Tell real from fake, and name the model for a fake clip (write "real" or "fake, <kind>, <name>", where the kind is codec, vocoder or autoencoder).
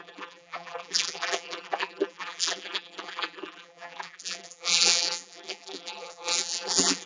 fake, vocoder, BigVGAN v2